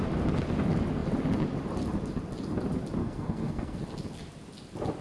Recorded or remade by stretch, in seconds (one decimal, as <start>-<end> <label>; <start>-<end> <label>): 0.0-3.0 recorded; 3.0-3.8 remade; 3.8-5.0 recorded